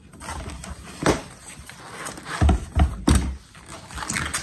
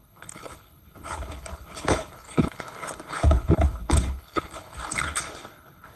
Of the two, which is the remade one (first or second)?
second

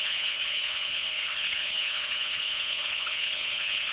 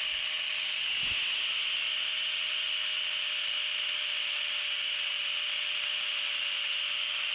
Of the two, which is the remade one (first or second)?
first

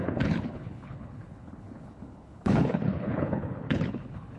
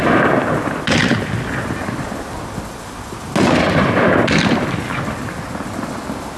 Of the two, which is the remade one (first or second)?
first